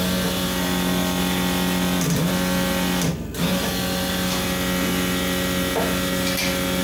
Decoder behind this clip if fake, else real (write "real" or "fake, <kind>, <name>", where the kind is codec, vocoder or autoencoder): real